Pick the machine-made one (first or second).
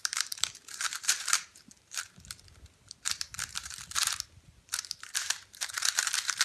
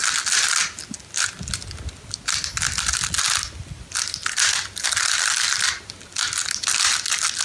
first